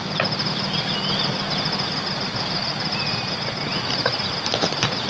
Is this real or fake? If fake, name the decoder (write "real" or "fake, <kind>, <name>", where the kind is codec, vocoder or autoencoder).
real